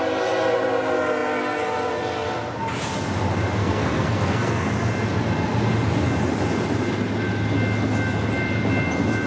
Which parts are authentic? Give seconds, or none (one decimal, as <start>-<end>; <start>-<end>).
0.0-3.6; 4.7-9.3